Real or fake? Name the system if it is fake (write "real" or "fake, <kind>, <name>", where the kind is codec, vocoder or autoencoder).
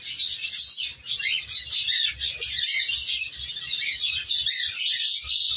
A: real